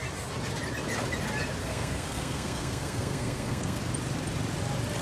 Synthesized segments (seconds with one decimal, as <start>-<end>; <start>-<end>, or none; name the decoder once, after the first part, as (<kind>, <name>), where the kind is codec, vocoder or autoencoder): 1.6-3.8 (codec, SNAC)